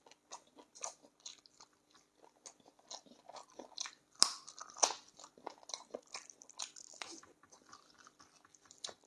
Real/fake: real